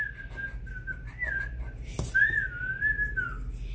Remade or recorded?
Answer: recorded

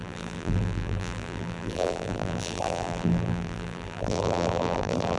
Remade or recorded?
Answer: remade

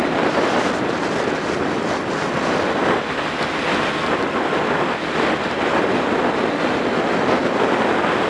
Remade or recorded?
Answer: recorded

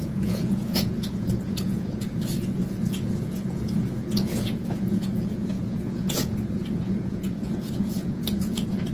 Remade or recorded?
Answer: remade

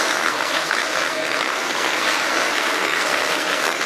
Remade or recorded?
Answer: remade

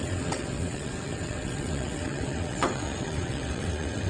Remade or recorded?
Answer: remade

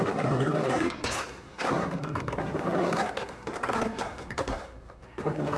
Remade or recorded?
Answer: remade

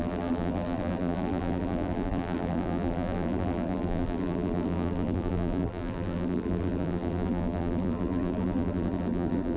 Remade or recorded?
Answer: remade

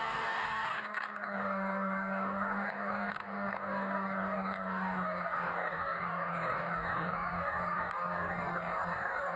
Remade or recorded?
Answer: remade